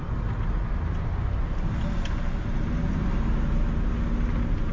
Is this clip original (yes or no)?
yes